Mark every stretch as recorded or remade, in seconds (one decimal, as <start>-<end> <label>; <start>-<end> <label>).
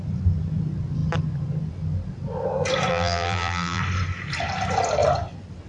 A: 0.0-2.9 recorded; 2.9-3.8 remade; 3.8-5.7 recorded